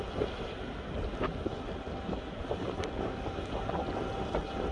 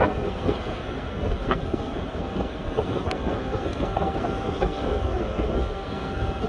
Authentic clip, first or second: first